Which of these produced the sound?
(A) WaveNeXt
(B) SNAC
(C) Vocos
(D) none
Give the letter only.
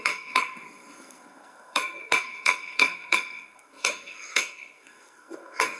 B